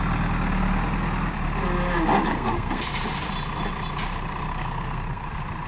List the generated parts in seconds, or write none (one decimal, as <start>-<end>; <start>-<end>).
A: 2.3-2.8; 4.5-5.3